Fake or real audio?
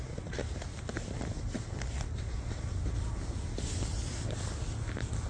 real